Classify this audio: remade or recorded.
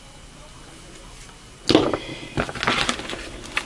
recorded